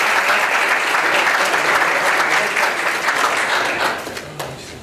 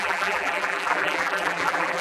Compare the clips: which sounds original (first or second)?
first